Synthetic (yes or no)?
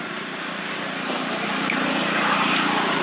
yes